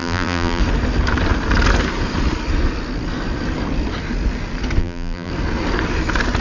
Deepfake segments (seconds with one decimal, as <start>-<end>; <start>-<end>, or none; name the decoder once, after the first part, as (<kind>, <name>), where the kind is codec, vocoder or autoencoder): 0.0-0.6 (vocoder, BigVGAN v2); 4.8-5.3